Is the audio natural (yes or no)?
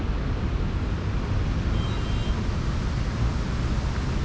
yes